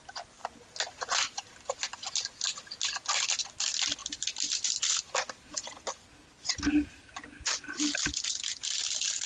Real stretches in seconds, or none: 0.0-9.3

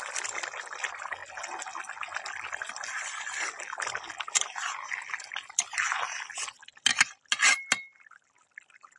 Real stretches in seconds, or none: 0.0-9.0

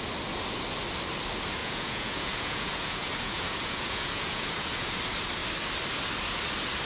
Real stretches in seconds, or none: 0.0-1.6; 5.0-6.9

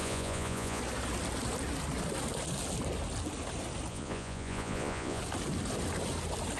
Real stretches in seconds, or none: 0.8-3.9; 5.2-6.6

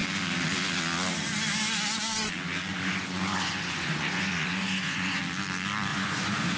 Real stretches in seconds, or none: 0.0-2.7; 5.2-5.9

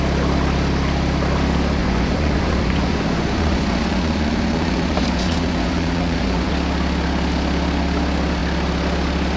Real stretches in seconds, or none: 0.0-1.8; 6.5-9.4

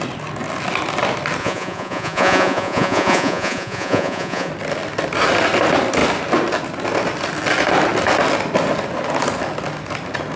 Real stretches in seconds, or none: 0.0-1.4; 4.5-10.4

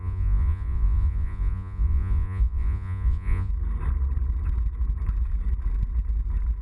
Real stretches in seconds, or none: 3.5-6.6